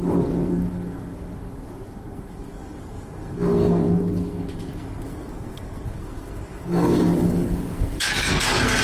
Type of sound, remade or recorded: remade